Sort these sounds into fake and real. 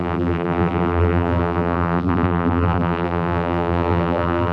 fake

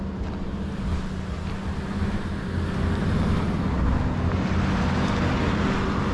real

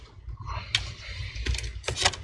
real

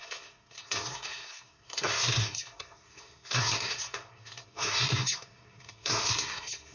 fake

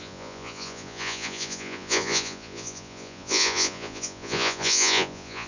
fake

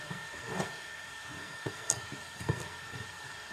fake